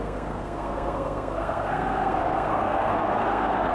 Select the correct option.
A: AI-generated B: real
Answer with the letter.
A